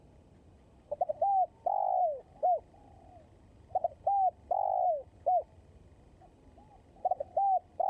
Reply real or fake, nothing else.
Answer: real